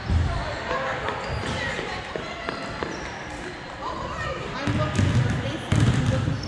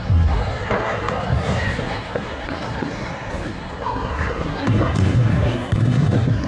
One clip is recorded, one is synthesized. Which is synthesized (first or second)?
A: second